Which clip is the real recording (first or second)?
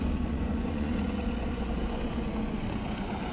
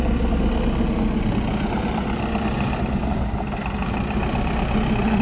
second